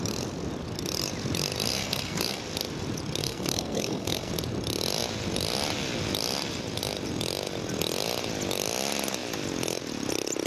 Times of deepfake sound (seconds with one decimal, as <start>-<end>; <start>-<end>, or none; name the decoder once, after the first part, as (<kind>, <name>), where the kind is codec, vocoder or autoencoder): 1.7-2.4 (codec, SNAC); 3.2-4.3